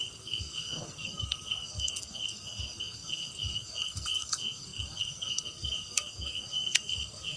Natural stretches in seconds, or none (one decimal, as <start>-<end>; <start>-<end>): none